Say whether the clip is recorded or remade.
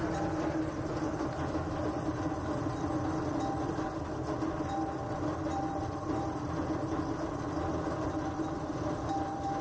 recorded